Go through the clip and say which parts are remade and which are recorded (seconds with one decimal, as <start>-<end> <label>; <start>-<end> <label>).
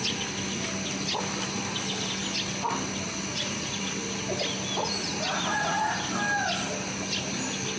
0.0-3.3 recorded; 3.3-3.8 remade; 3.8-4.8 recorded; 4.8-5.9 remade; 5.9-7.8 recorded